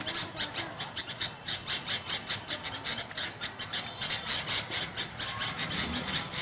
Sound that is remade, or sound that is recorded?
recorded